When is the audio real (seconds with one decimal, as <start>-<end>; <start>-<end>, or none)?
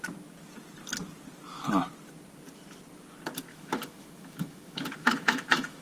0.0-3.5